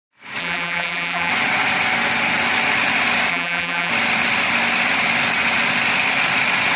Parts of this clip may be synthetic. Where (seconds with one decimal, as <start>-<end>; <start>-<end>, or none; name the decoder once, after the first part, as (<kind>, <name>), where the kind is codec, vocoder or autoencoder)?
0.4-1.3 (vocoder, BigVGAN v2); 3.3-3.9